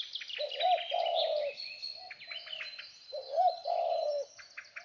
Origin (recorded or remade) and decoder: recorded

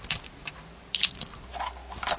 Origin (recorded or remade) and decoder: recorded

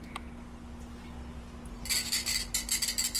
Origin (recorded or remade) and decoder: recorded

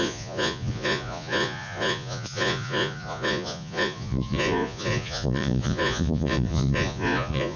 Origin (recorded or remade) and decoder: remade, vocoder, Vocos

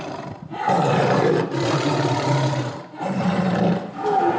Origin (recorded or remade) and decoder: remade, vocoder, BigVGAN v2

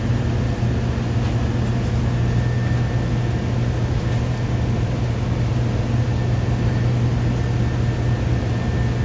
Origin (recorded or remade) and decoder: recorded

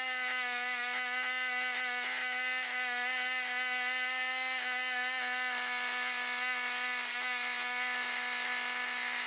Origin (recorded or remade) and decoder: recorded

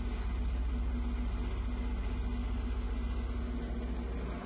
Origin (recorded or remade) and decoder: recorded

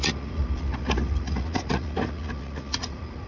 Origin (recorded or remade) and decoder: remade, vocoder, Vocos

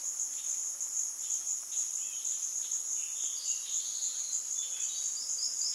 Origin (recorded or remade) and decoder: recorded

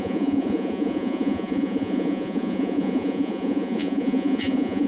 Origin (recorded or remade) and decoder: remade, vocoder, Vocos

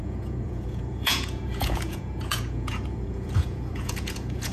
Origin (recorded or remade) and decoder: remade, vocoder, Vocos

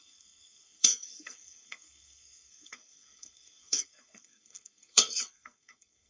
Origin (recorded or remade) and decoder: remade, codec, SNAC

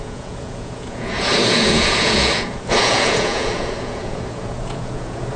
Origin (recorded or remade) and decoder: remade, vocoder, Vocos